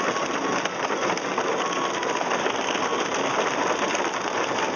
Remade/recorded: recorded